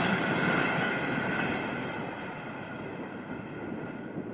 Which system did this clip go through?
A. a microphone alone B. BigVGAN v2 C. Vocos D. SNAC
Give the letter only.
A